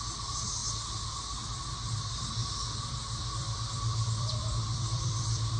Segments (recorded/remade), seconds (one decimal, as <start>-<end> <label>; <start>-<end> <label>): 0.0-2.4 recorded; 2.4-5.6 remade